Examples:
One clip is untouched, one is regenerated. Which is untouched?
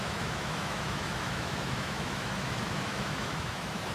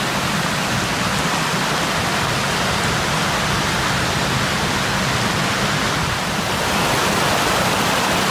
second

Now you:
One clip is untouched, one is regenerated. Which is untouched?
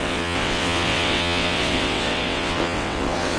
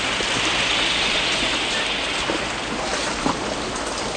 second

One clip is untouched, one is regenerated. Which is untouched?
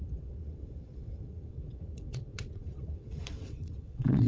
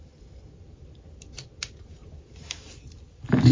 second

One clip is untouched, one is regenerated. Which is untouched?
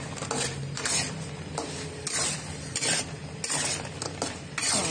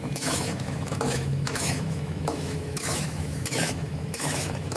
first